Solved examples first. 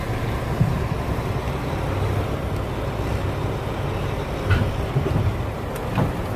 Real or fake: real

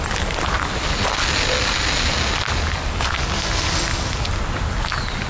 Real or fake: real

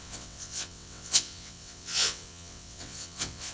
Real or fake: fake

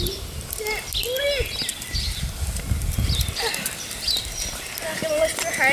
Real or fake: real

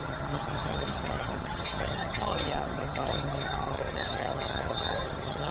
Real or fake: fake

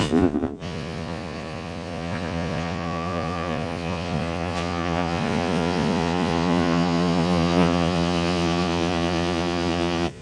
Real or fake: fake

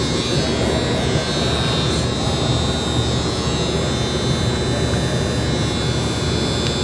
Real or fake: real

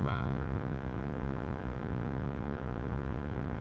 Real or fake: fake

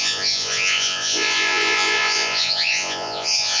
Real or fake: fake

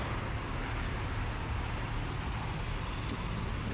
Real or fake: real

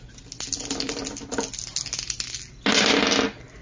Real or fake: real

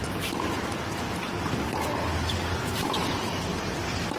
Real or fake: real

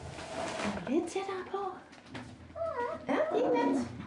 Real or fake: real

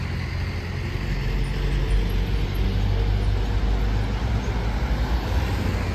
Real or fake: real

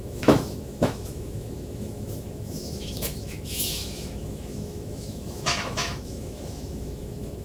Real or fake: fake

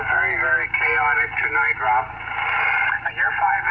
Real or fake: real